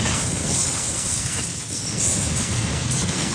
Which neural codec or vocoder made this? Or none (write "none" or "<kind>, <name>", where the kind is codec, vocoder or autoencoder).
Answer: codec, SNAC